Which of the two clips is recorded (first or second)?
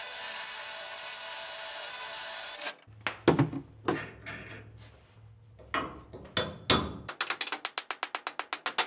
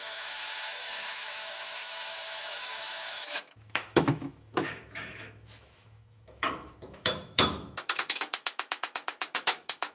first